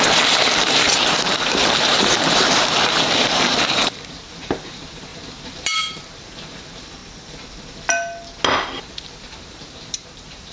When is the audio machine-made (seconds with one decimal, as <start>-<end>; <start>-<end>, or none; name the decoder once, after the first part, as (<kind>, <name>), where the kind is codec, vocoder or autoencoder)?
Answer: 0.0-7.0 (vocoder, BigVGAN v2); 9.0-10.5